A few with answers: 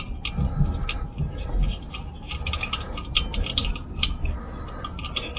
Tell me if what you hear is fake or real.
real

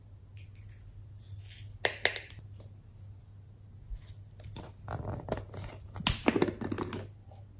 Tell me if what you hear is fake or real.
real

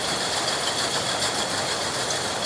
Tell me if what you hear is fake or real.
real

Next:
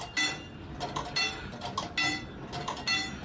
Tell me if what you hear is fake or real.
real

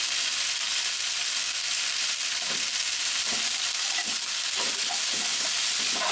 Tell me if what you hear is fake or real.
real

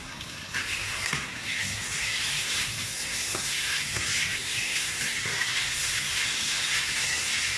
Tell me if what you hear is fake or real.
fake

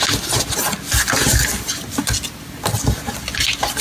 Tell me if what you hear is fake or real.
real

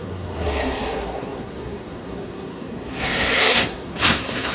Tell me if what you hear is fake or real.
fake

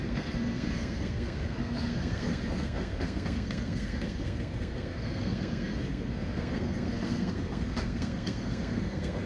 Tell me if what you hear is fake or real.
fake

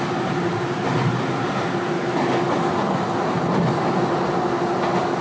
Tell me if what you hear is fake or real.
real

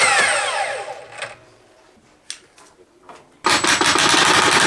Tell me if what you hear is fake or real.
real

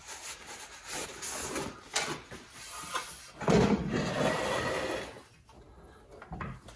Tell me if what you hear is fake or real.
real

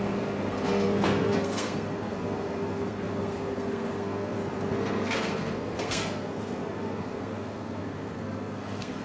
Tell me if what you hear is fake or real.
fake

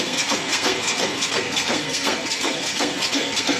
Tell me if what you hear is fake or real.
fake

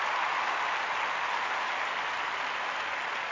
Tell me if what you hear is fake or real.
real